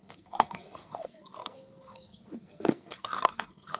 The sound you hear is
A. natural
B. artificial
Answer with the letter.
B